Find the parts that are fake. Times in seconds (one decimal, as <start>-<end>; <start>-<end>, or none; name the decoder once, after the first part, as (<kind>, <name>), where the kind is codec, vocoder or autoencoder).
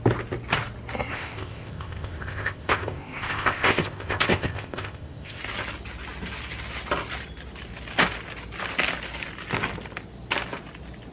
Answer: 1.1-5.4 (codec, ZipCodec)